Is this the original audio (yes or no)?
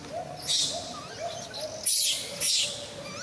yes